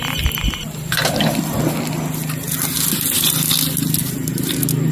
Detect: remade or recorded recorded